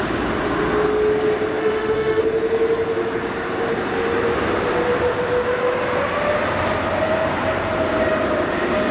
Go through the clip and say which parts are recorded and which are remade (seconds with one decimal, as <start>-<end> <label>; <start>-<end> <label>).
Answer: 0.0-1.6 recorded; 1.6-2.2 remade; 2.2-8.9 recorded